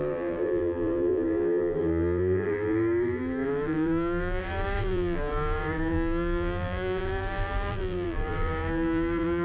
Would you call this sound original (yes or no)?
no